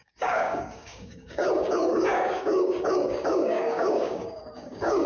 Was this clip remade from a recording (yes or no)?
yes